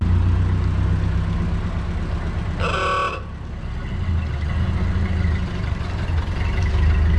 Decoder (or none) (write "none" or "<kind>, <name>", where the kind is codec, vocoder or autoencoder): none